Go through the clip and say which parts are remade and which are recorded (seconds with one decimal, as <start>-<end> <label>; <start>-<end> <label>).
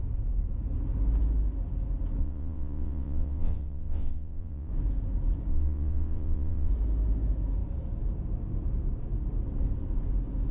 0.0-2.2 recorded; 2.2-4.7 remade; 4.7-5.5 recorded; 5.5-6.7 remade; 6.7-10.5 recorded